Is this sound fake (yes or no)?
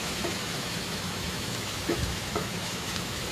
yes